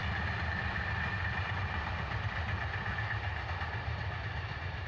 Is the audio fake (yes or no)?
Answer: no